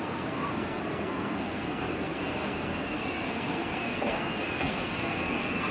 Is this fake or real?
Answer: fake